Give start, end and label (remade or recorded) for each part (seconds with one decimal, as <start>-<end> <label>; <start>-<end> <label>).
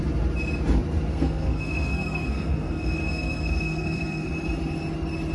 0.0-1.1 recorded; 1.1-4.3 remade; 4.3-5.3 recorded